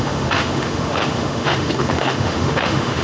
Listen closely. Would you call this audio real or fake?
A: fake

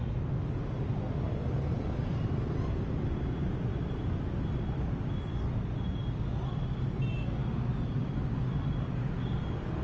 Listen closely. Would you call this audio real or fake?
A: real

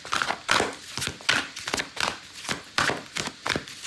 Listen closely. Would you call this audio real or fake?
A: real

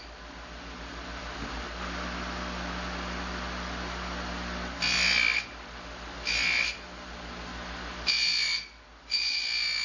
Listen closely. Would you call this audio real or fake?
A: real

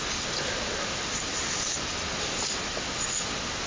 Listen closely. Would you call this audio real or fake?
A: real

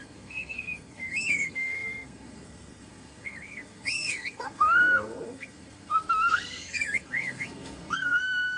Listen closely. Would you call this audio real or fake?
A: fake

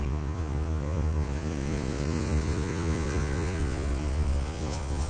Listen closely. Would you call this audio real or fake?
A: fake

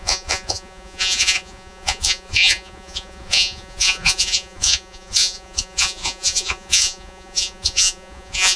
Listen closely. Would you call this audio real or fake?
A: fake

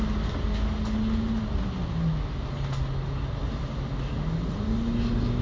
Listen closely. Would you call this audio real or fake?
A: real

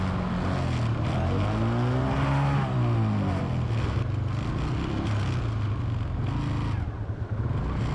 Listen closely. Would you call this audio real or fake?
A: real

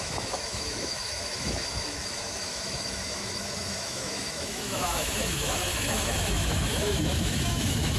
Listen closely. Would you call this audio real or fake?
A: fake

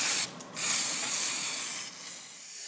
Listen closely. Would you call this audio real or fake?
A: real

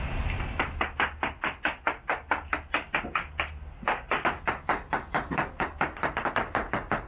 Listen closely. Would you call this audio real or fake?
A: real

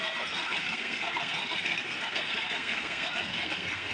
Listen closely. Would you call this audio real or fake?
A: fake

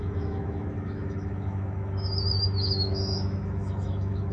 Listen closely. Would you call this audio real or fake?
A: fake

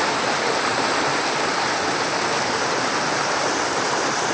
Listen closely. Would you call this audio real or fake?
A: fake